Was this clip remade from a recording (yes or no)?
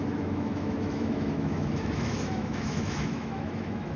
yes